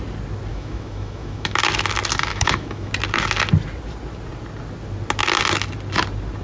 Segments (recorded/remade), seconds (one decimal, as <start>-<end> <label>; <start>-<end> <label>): 0.0-0.5 recorded; 0.5-1.6 remade; 1.6-2.3 recorded; 2.3-2.9 remade; 2.9-6.4 recorded